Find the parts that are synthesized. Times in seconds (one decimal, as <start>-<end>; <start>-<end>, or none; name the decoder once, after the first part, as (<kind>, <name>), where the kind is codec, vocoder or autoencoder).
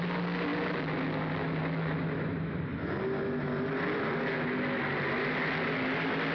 none